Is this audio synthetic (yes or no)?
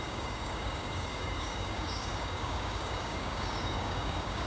yes